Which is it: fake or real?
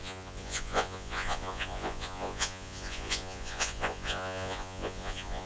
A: fake